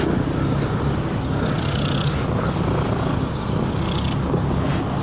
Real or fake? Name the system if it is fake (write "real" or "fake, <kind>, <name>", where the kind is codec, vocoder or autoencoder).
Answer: real